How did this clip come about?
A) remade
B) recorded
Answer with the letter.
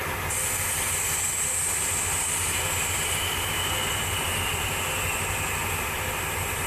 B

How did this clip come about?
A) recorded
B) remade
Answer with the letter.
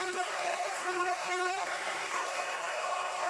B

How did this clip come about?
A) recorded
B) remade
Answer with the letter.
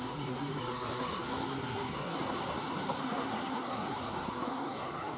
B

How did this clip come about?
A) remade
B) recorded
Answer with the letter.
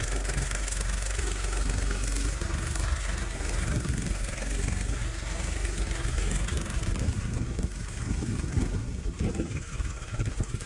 A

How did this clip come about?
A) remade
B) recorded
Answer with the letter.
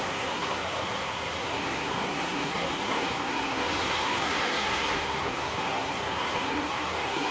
A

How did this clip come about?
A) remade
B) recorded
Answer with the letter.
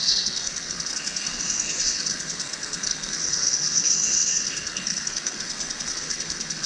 A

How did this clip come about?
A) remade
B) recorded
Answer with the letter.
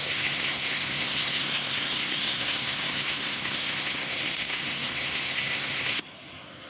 A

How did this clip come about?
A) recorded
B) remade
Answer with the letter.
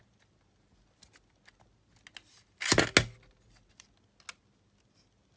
A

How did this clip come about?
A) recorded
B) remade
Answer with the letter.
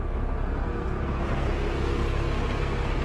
B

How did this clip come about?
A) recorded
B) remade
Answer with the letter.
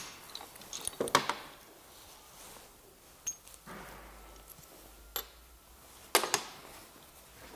A